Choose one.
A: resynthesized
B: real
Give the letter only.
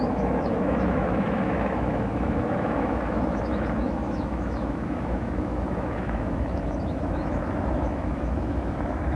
A